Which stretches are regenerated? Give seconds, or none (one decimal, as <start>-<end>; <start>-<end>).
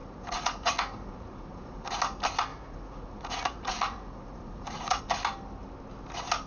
0.0-2.0; 2.5-5.0